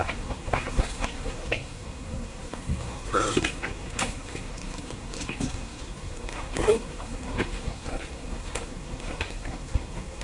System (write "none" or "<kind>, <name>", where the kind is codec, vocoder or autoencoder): codec, SNAC